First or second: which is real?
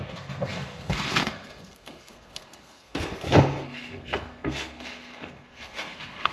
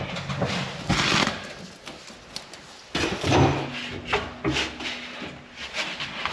second